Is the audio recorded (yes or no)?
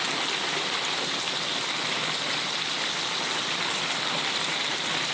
yes